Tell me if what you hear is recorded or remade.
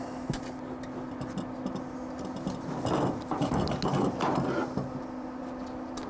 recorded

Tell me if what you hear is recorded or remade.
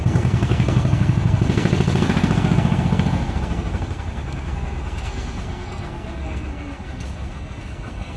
remade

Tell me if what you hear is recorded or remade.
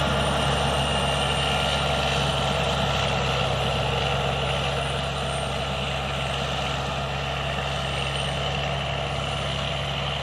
recorded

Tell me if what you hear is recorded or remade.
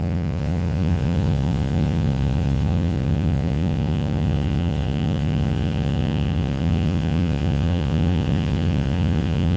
remade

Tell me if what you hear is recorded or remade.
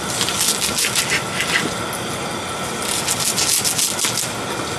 recorded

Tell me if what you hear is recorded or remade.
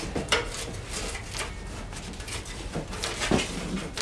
recorded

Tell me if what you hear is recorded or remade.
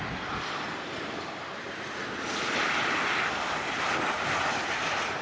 recorded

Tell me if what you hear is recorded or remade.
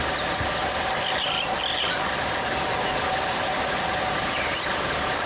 recorded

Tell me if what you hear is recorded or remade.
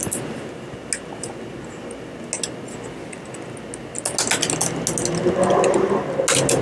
recorded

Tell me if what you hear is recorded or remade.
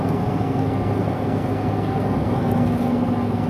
remade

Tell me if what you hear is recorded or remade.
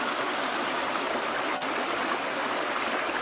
recorded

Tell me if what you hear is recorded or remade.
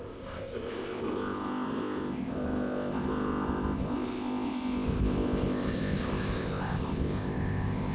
remade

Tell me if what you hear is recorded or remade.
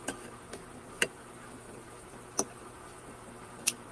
remade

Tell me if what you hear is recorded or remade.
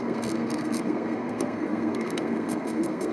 remade